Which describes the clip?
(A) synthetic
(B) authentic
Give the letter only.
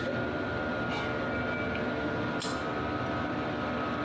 B